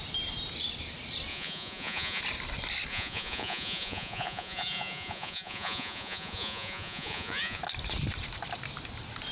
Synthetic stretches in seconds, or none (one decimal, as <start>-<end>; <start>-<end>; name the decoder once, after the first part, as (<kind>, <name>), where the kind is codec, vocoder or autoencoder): 1.3-2.2 (vocoder, Vocos); 2.9-7.6